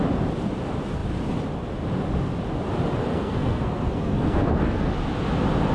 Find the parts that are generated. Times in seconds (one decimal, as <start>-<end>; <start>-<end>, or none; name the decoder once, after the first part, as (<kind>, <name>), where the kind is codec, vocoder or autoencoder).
3.1-4.9 (codec, SNAC)